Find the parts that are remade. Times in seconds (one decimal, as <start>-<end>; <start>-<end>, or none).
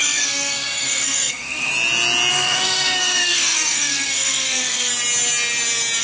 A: 0.0-1.7; 2.3-4.9